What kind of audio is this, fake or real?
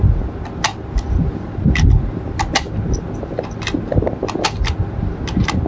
real